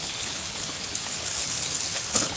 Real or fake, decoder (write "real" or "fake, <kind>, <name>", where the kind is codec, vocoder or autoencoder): fake, codec, HILCodec